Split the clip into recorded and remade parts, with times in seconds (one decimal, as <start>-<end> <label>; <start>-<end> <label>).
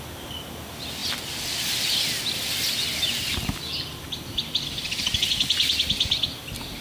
0.0-6.8 recorded